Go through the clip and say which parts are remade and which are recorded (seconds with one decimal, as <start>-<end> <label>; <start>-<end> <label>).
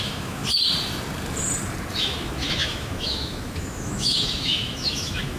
0.0-0.4 remade; 0.4-2.0 recorded; 2.0-5.4 remade